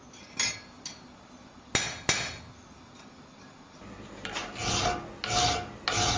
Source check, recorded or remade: recorded